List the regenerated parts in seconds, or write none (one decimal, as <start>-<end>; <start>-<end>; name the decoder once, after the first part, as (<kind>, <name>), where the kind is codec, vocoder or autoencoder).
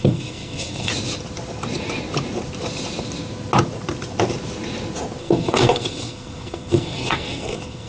0.0-0.9 (codec, SNAC); 5.2-7.9